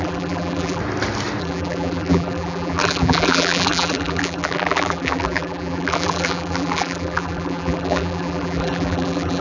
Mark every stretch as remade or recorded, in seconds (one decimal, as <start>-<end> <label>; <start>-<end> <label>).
0.0-0.8 remade; 0.8-1.4 recorded; 1.4-9.4 remade